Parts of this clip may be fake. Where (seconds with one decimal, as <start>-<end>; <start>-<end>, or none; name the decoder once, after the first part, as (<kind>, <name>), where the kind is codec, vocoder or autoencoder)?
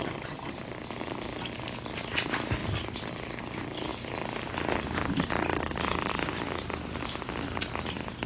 0.0-0.6 (vocoder, HiFi-GAN)